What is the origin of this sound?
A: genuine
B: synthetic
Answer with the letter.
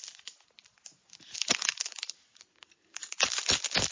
A